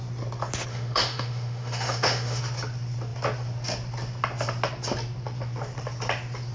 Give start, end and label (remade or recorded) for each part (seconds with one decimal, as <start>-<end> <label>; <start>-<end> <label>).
0.0-0.7 recorded; 0.7-2.4 remade; 2.4-6.5 recorded